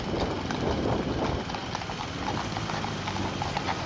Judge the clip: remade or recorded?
recorded